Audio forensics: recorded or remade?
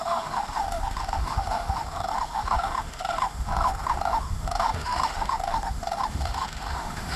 remade